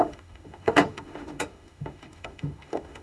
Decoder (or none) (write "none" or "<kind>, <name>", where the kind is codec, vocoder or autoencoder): autoencoder, DAC-VAE